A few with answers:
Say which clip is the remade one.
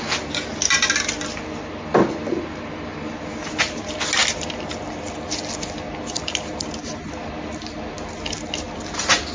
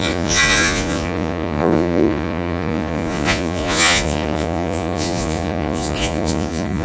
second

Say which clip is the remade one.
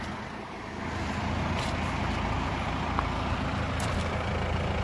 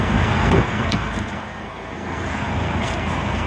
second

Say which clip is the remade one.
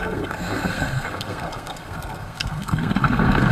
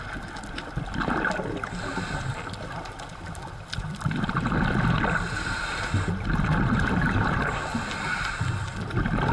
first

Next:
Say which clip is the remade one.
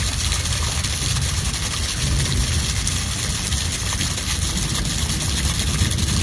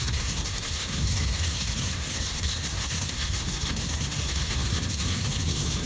second